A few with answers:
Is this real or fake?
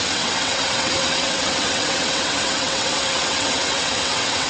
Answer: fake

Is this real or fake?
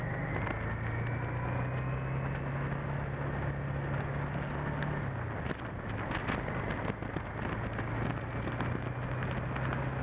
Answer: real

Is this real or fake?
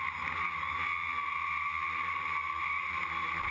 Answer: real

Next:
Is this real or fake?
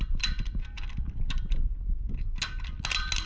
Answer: real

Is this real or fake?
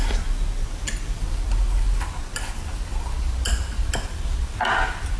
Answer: real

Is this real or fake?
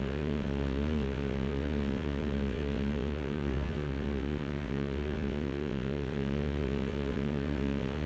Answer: fake